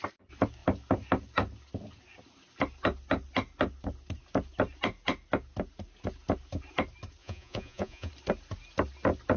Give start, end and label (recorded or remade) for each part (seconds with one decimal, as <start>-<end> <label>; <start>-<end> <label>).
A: 0.0-7.2 recorded; 7.2-8.1 remade; 8.1-9.4 recorded